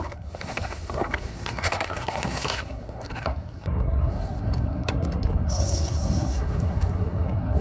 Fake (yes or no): yes